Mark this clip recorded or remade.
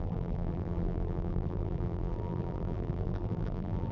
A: remade